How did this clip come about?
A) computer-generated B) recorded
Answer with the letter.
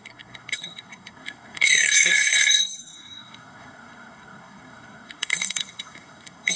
A